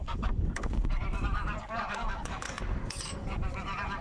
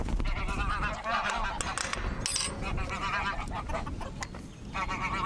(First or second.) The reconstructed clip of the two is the first